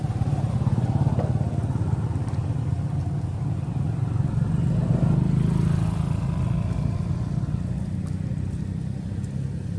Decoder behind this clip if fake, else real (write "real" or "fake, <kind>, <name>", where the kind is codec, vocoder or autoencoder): real